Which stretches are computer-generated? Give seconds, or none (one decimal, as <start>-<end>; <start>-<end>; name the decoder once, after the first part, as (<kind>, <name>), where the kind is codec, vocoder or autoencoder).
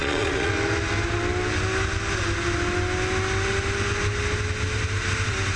0.0-0.5 (vocoder, Vocos)